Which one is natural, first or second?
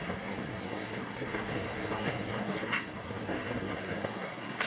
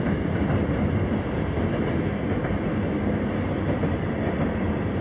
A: second